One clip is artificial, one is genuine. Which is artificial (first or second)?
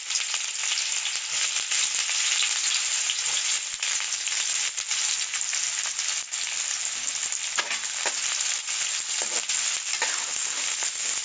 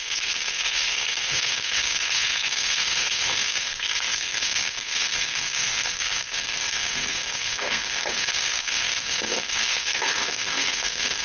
second